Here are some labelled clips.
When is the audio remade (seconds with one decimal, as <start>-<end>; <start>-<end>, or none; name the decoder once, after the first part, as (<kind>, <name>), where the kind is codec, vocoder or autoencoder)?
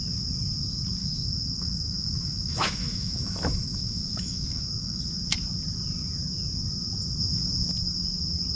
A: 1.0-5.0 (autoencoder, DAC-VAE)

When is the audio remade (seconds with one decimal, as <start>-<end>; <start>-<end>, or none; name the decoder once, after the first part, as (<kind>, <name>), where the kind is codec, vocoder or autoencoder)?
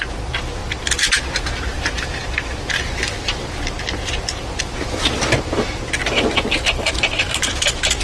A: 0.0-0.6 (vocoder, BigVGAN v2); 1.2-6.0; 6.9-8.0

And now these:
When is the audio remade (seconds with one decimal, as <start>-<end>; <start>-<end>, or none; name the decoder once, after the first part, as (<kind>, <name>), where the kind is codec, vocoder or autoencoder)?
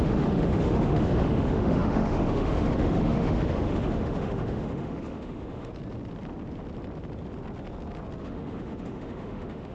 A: 0.0-5.7 (autoencoder, DAC-VAE); 8.2-9.7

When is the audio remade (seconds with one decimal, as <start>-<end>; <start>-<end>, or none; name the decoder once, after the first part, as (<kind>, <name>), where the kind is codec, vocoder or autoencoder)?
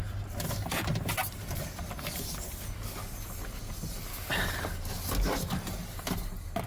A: none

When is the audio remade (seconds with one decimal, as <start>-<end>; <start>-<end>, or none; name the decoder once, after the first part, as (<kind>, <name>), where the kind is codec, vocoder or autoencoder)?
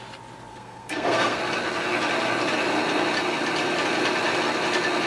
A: 0.5-1.4 (codec, SNAC)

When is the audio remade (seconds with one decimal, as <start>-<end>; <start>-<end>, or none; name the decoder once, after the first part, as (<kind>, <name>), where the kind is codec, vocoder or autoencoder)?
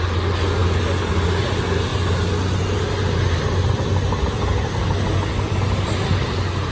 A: none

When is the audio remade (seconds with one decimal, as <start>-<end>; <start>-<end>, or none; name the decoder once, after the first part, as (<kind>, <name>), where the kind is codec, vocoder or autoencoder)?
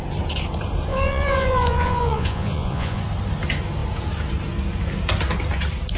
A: 0.9-3.0 (vocoder, Vocos)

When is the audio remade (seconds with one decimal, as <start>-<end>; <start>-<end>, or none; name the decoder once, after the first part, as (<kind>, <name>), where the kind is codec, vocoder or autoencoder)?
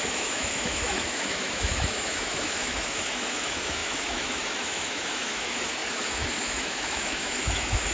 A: 0.0-7.9 (autoencoder, DAC-VAE)